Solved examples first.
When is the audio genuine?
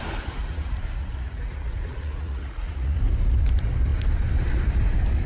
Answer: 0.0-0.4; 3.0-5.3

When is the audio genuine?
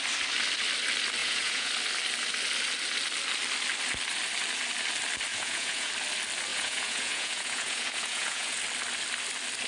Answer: 0.0-1.2; 1.7-5.3; 5.9-6.5; 8.6-9.7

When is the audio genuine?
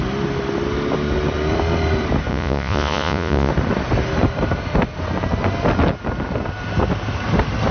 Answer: 0.0-2.3; 3.5-7.7